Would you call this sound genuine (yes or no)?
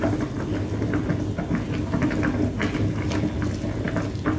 yes